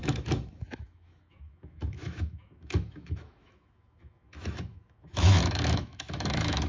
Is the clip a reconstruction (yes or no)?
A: yes